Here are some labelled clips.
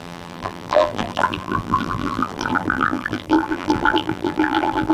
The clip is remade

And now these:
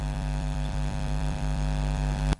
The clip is remade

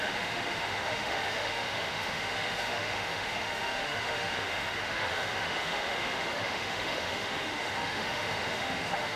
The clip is remade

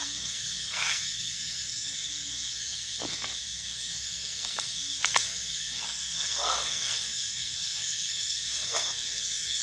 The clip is remade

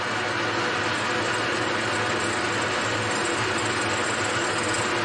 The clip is recorded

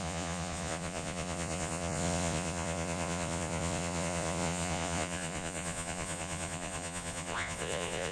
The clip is remade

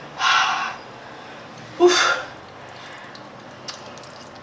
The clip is recorded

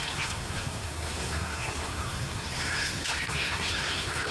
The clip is remade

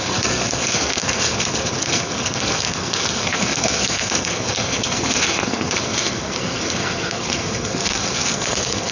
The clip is remade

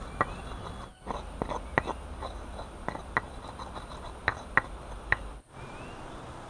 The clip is recorded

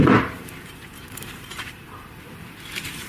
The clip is remade